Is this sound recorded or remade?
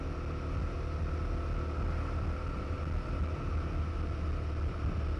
recorded